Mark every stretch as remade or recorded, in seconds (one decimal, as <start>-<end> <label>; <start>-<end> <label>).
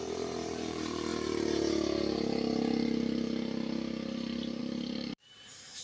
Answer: 0.0-1.1 remade; 1.1-4.6 recorded; 4.6-5.8 remade